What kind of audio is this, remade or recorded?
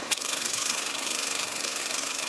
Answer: remade